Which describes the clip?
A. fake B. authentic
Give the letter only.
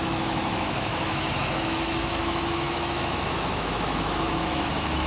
A